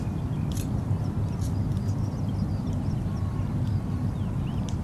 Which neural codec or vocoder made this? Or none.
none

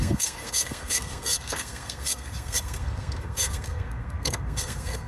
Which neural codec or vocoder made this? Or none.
codec, SNAC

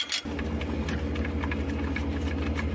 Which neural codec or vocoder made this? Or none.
none